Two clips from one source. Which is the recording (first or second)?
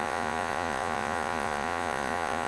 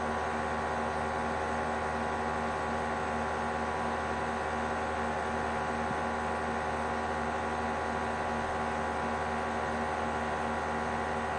second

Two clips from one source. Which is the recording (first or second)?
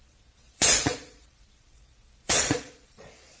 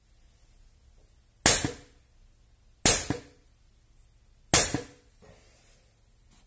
second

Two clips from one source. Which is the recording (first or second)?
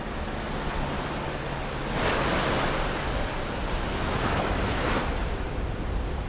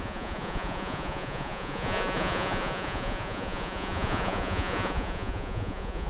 first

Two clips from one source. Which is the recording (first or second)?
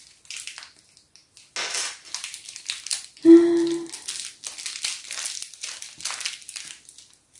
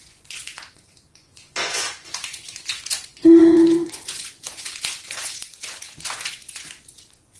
first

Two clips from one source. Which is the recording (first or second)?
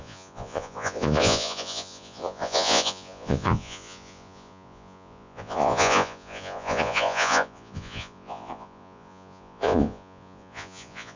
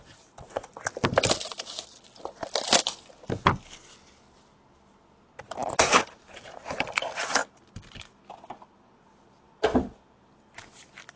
second